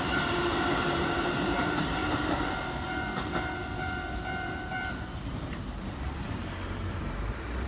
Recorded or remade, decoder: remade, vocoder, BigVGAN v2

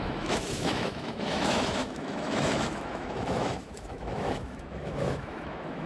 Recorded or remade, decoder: remade, autoencoder, DAC-VAE